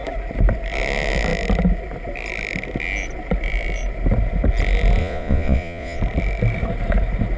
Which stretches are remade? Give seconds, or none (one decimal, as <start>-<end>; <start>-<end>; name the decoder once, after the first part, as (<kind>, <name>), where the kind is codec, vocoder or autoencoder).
5.0-6.0 (vocoder, Vocos)

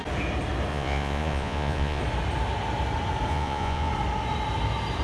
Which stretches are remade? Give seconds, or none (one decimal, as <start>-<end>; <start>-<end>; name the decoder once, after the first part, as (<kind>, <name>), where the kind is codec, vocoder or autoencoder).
0.7-2.0 (vocoder, Vocos); 3.3-3.9

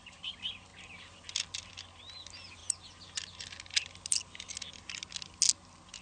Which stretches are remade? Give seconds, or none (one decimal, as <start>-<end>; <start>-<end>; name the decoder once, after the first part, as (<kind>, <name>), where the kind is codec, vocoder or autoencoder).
none

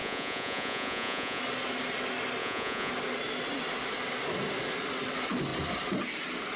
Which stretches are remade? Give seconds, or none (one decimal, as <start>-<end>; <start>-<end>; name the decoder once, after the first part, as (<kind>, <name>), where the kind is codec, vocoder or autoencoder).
0.0-1.4 (vocoder, Vocos); 2.4-2.9

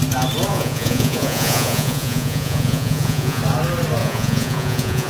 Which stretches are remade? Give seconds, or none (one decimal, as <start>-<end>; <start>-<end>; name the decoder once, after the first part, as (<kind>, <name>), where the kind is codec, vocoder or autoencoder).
0.5-3.4 (vocoder, Vocos); 4.0-5.1